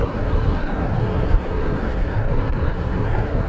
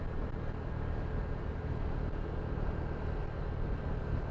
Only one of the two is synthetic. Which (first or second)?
first